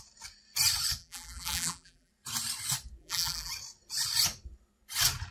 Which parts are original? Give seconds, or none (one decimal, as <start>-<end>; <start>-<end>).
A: 0.0-1.0; 2.1-3.0; 3.5-5.3